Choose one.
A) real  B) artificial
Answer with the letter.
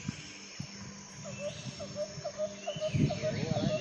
A